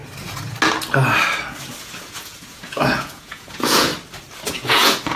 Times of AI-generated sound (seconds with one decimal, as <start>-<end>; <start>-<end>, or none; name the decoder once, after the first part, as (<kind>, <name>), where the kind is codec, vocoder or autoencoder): 1.8-3.9 (vocoder, Vocos); 4.5-5.2